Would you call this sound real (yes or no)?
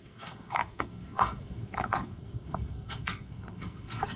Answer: no